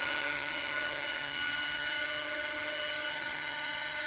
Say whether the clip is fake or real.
fake